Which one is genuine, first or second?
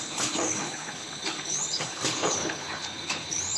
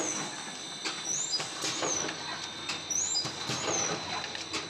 second